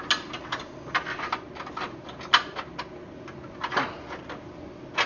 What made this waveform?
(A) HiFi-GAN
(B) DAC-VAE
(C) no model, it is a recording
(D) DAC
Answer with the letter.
C